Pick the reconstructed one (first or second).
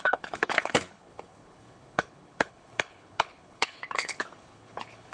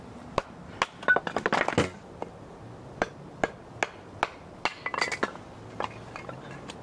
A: first